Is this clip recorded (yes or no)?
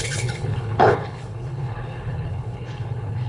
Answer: no